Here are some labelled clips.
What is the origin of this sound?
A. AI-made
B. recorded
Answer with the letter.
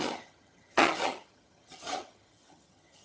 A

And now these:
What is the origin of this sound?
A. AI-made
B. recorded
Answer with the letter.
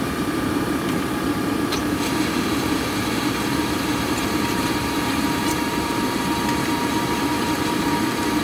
A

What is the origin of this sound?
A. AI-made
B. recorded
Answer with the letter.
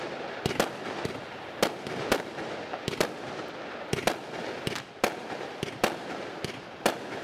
B